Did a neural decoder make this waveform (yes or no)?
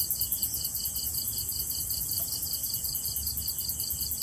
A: no